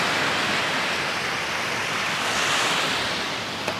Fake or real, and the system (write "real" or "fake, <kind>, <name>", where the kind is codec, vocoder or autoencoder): real